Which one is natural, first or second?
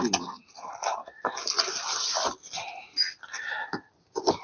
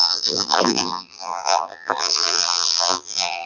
first